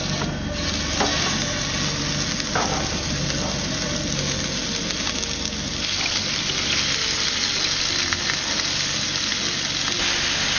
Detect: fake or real real